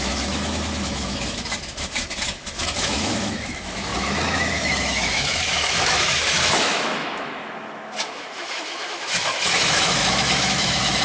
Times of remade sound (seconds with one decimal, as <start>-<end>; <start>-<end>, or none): 0.0-11.0